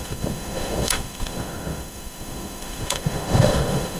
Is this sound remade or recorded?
remade